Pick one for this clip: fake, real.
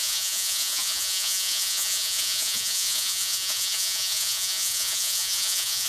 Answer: fake